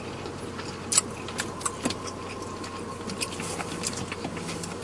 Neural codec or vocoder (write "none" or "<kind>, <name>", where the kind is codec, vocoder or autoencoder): none